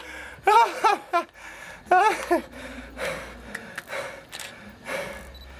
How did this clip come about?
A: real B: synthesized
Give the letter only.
A